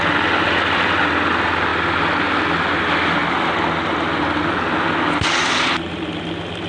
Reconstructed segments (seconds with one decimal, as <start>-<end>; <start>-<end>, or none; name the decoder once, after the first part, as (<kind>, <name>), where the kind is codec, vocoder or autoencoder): none